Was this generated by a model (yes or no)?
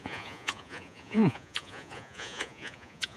yes